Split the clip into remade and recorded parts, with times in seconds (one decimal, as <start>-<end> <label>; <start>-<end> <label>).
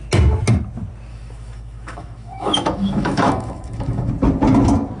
0.0-1.1 recorded; 1.1-4.1 remade; 4.1-5.0 recorded